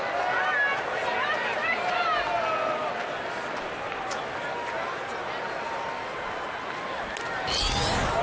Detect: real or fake real